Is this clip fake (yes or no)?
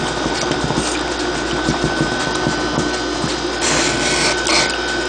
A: no